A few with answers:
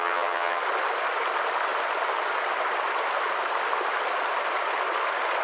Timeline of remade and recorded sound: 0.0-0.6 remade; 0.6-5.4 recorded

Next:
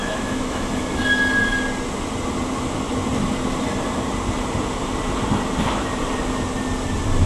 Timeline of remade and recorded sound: 0.0-0.8 remade; 0.8-7.3 recorded

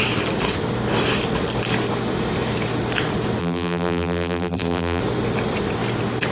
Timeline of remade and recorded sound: 0.0-3.4 recorded; 3.4-5.0 remade; 5.0-6.3 recorded

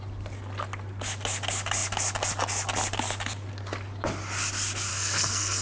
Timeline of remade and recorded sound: 0.0-4.9 recorded; 4.9-5.6 remade

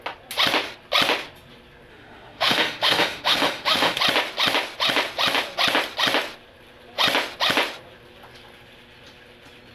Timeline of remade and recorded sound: 0.0-1.9 recorded; 1.9-4.0 remade; 4.0-9.7 recorded